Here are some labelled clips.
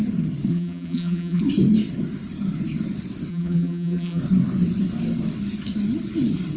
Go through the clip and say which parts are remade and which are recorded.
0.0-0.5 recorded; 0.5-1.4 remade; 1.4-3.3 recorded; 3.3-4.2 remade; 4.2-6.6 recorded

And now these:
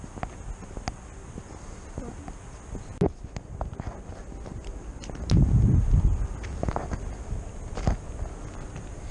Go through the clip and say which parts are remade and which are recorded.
0.0-9.1 recorded

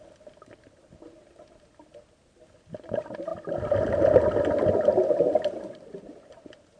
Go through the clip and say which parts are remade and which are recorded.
0.0-6.8 recorded

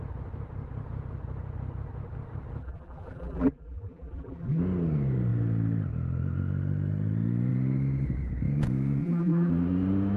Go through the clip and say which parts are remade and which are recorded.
0.0-2.6 recorded; 2.6-4.6 remade; 4.6-9.0 recorded; 9.0-9.5 remade; 9.5-10.2 recorded

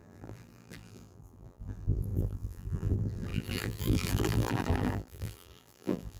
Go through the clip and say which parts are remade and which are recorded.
0.0-6.2 remade

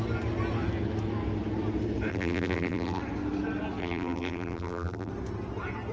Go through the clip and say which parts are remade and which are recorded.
0.0-2.1 recorded; 2.1-3.0 remade; 3.0-3.8 recorded; 3.8-5.1 remade; 5.1-5.9 recorded

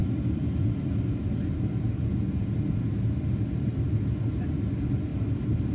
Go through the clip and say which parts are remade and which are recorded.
0.0-0.9 remade; 0.9-5.1 recorded; 5.1-5.7 remade

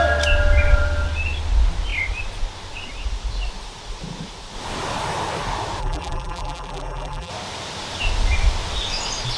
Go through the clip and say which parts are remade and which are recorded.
0.0-5.8 recorded; 5.8-7.3 remade; 7.3-9.4 recorded